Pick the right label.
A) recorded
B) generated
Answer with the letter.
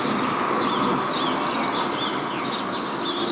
A